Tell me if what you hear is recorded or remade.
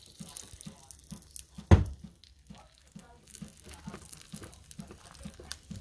recorded